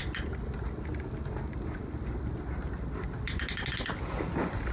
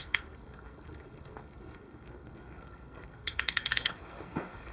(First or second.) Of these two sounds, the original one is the first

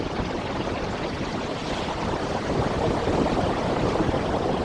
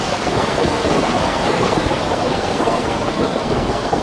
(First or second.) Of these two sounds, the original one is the first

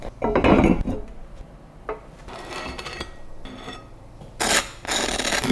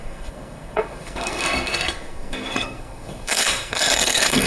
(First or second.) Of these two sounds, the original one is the first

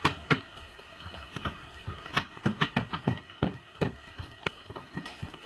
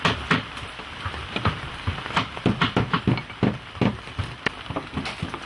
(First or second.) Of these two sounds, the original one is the second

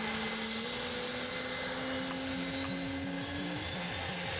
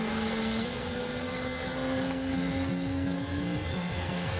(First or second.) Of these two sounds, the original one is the first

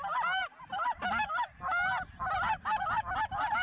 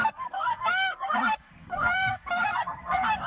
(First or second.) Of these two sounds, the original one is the first